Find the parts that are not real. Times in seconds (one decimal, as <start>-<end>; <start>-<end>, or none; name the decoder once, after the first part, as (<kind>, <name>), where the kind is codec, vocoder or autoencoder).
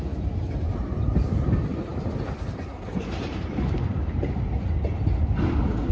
1.9-4.6 (vocoder, BigVGAN v2)